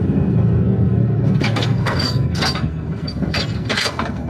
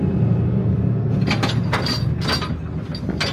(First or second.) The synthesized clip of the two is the first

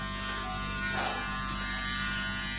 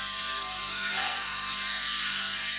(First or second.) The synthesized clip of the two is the second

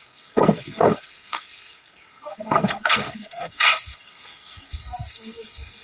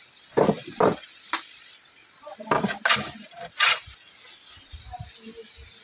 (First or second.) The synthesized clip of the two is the first